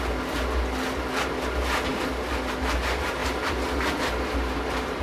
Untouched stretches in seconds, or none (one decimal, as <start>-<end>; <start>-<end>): 0.0-3.2; 4.0-5.0